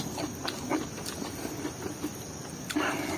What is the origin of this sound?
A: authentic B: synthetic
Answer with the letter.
A